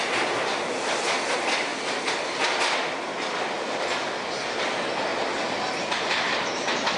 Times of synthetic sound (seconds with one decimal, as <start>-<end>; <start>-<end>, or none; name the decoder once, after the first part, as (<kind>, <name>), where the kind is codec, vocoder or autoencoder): none